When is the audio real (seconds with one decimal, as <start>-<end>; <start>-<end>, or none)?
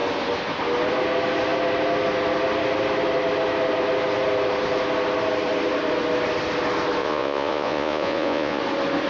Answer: 0.0-7.0; 8.6-9.1